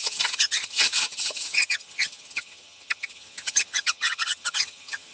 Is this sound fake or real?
fake